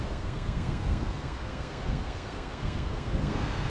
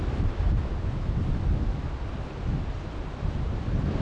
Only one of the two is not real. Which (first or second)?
first